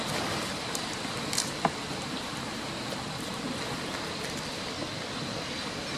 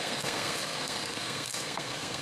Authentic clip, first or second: first